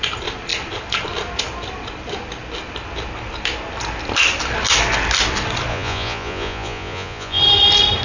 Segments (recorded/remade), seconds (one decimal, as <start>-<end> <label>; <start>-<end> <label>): 0.0-5.7 recorded; 5.7-7.4 remade; 7.4-8.0 recorded